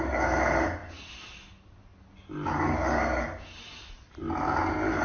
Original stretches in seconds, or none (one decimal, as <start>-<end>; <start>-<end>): 0.0-5.0